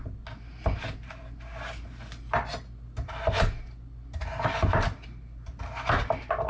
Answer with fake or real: real